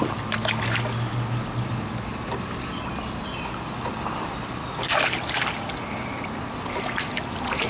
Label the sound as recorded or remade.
recorded